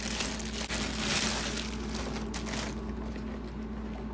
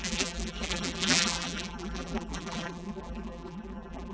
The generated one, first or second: second